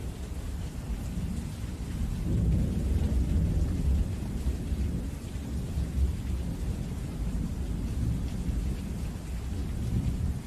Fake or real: real